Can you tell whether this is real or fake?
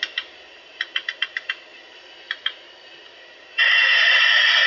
fake